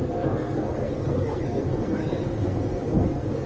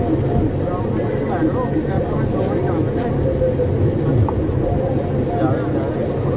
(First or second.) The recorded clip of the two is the second